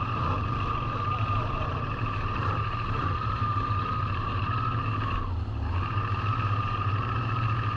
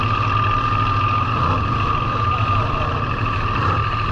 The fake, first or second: first